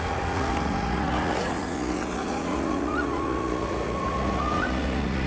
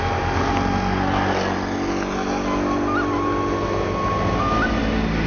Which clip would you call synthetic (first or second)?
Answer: first